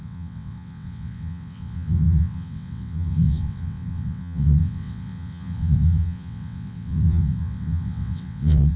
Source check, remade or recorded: remade